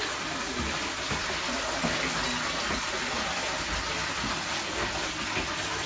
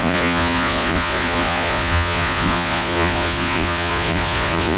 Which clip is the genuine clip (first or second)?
first